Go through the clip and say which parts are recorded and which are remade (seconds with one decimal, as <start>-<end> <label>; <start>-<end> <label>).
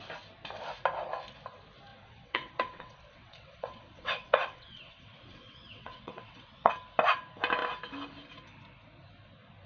0.0-1.9 recorded; 1.9-6.7 remade; 6.7-9.7 recorded